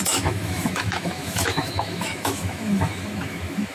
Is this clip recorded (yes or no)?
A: no